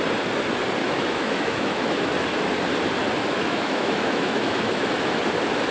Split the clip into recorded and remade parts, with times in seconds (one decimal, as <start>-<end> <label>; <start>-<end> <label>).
0.0-0.8 recorded; 0.8-2.1 remade; 2.1-3.2 recorded; 3.2-4.9 remade; 4.9-5.7 recorded